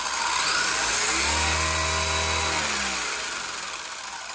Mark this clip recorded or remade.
recorded